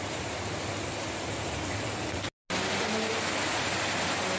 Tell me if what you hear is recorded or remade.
recorded